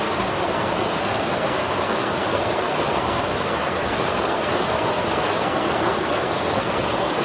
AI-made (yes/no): yes